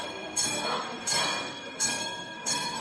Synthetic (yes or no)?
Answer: yes